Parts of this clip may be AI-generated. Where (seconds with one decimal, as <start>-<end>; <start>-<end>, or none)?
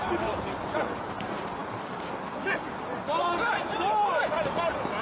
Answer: none